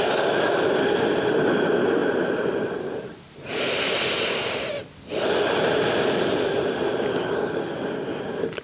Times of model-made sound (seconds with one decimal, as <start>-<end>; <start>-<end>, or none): 2.0-3.5